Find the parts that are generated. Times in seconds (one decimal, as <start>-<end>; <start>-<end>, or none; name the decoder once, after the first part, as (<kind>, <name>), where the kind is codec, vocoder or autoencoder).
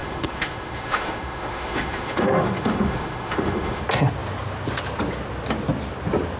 0.0-3.8 (autoencoder, DAC-VAE)